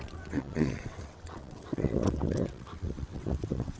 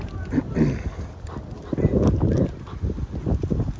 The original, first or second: second